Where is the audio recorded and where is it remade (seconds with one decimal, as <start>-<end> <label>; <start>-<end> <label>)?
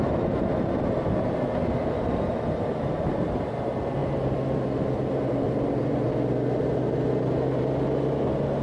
0.0-8.6 recorded